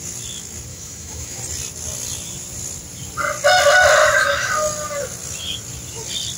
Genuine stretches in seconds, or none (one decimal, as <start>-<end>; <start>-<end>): 0.0-0.7; 1.4-4.0; 4.5-6.4